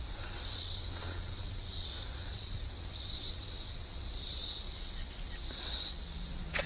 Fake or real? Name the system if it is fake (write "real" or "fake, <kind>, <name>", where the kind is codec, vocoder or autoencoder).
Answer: fake, vocoder, WaveNeXt